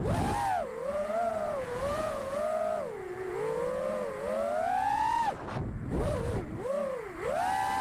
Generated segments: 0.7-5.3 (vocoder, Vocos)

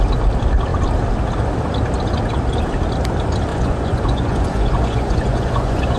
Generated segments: 3.5-6.0 (vocoder, Vocos)

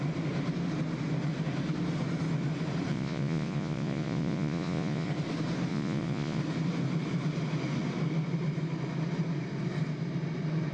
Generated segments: 2.9-5.1 (vocoder, Vocos); 5.7-6.4

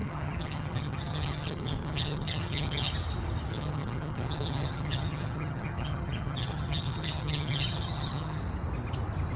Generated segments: 0.0-2.9 (vocoder, HiFi-GAN); 3.5-8.4

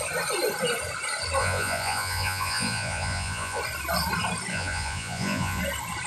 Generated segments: 1.4-3.6 (vocoder, Vocos); 4.5-5.6

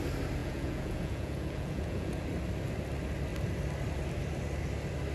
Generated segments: 0.4-2.2 (vocoder, Vocos)

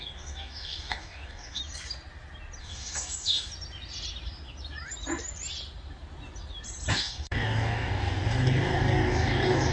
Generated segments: 0.0-1.6 (codec, DAC); 2.6-3.5; 6.9-9.7

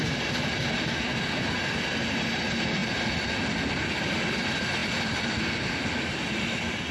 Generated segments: none